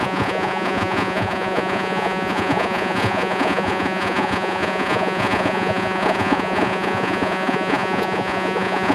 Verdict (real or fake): fake